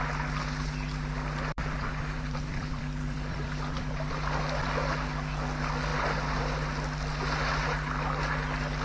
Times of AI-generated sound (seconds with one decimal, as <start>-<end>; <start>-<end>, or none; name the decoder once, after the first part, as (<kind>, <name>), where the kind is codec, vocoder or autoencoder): 1.5-4.6 (vocoder, BigVGAN v2); 5.9-6.4